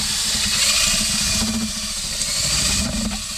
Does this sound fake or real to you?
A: real